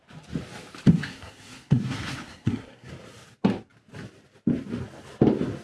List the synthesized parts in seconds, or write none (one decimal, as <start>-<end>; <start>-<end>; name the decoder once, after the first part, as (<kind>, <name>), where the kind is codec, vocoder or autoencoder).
0.9-2.9 (codec, SNAC)